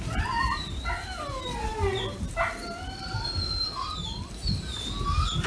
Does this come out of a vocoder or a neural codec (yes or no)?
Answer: no